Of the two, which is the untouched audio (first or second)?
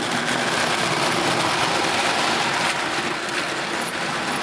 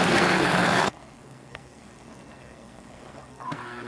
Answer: first